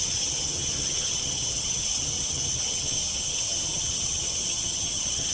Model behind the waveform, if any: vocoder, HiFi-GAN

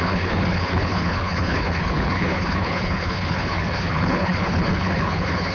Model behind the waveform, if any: codec, HILCodec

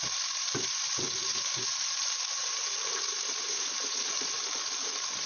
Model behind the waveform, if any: none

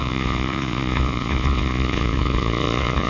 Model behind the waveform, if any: vocoder, Vocos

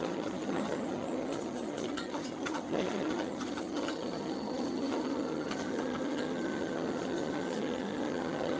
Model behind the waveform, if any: vocoder, HiFi-GAN